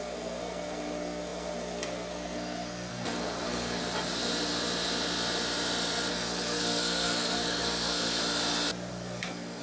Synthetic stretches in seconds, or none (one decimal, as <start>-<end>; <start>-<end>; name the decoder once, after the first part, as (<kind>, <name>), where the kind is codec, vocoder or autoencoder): 0.0-3.8 (codec, SNAC); 6.1-8.2; 8.9-9.6